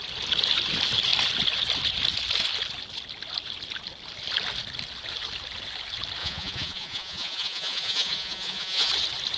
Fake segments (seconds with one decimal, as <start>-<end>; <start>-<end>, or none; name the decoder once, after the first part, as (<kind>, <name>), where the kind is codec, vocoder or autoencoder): 6.2-8.9 (vocoder, Vocos)

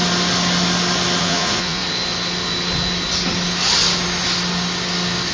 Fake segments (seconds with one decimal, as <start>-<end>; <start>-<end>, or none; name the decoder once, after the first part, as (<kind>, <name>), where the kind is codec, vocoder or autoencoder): 1.2-1.8 (vocoder, Vocos)

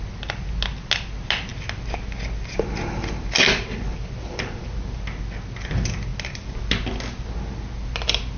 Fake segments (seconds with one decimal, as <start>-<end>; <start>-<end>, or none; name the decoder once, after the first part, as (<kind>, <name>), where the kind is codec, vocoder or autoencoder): none